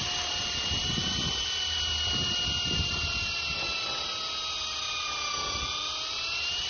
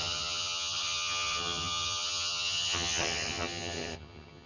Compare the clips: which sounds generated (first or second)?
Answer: second